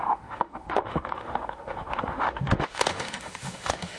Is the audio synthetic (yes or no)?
yes